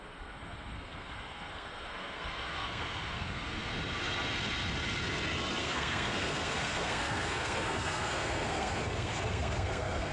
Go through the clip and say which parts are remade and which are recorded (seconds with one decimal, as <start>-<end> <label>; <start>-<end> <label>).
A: 0.0-3.7 remade; 3.7-5.6 recorded; 5.6-10.1 remade